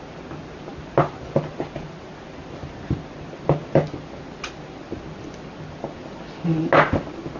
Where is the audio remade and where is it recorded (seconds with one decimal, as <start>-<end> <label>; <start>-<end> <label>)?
0.0-7.4 recorded